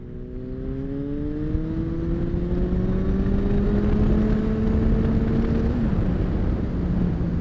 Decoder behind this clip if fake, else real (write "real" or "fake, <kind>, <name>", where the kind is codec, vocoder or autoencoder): real